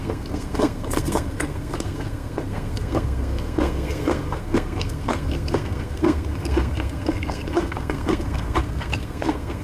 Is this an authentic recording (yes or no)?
no